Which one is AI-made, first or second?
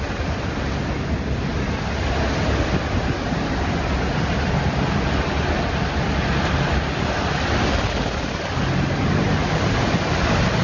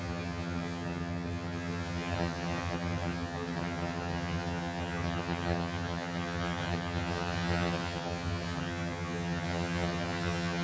second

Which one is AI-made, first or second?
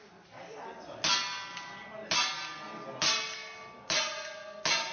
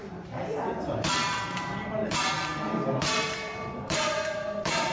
second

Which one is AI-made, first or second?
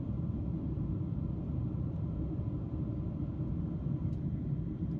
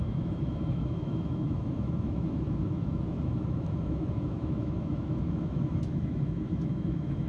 second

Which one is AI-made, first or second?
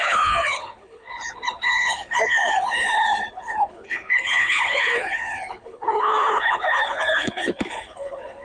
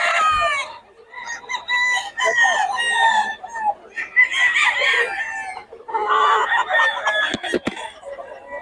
first